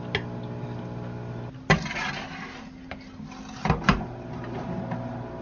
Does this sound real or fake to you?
real